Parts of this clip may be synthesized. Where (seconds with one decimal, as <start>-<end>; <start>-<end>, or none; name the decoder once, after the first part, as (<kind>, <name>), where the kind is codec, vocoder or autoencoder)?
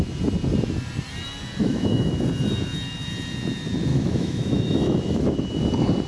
1.6-2.1 (autoencoder, DAC-VAE); 3.9-5.6